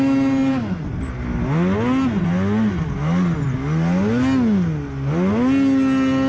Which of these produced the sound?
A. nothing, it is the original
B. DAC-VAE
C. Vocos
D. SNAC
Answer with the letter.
A